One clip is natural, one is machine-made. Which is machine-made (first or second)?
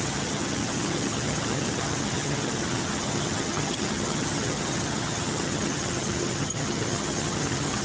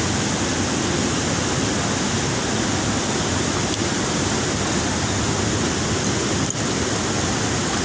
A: first